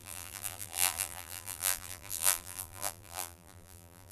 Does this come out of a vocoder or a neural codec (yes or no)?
yes